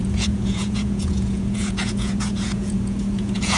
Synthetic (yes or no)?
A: yes